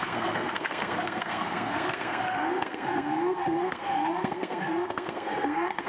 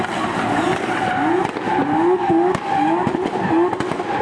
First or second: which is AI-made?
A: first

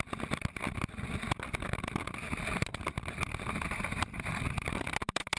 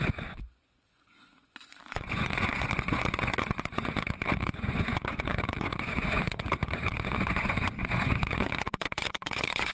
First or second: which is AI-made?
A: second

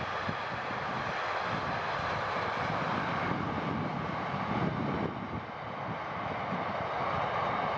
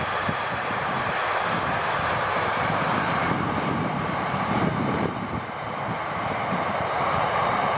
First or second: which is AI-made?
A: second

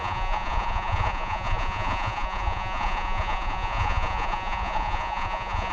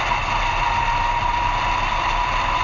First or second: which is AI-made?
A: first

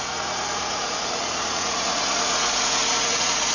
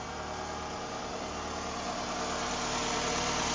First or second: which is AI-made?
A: first